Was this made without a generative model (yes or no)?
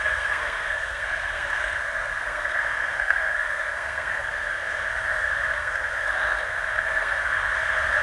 no